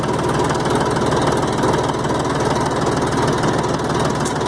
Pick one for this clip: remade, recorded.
recorded